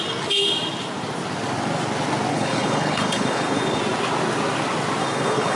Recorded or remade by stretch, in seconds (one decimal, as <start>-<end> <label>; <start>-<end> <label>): 0.0-2.3 recorded; 2.3-3.8 remade; 3.8-5.0 recorded; 5.0-5.6 remade